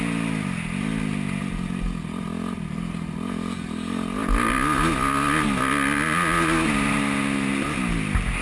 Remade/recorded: recorded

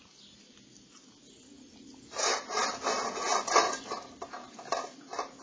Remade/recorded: recorded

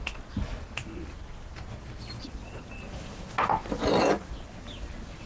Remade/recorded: recorded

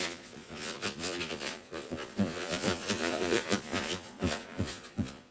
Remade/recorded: remade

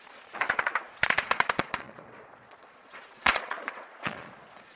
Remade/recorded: remade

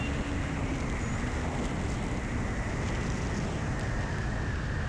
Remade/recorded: recorded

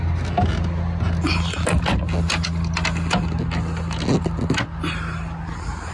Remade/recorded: recorded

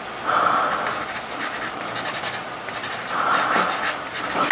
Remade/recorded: recorded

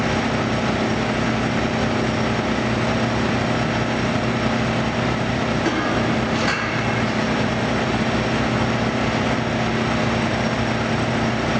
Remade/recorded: recorded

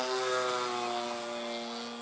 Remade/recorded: recorded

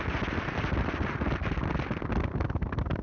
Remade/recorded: recorded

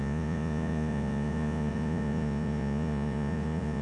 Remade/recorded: remade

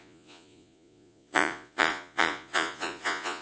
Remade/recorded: remade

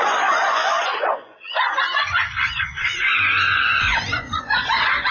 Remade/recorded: remade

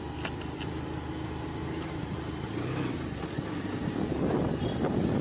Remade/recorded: recorded